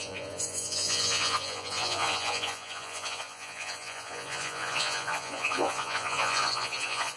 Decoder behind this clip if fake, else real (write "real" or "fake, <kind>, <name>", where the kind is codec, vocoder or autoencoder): fake, vocoder, Vocos